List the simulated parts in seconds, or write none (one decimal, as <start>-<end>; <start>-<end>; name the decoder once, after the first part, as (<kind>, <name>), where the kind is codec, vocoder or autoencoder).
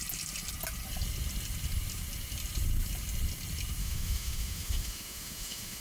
3.8-5.8 (autoencoder, DAC-VAE)